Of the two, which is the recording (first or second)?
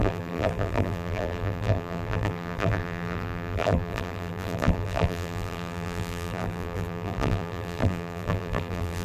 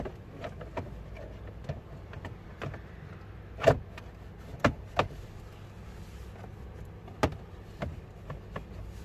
second